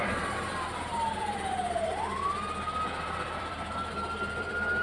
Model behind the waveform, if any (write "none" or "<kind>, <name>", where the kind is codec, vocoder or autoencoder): vocoder, BigVGAN v2